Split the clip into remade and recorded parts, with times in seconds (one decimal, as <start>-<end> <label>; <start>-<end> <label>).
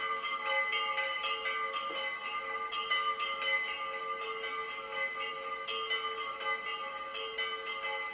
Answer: 0.0-8.1 recorded